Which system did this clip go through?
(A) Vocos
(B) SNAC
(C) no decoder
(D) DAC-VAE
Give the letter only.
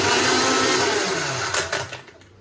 C